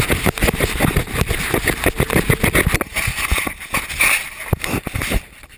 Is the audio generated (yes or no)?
no